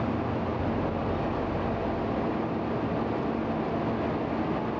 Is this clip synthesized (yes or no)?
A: no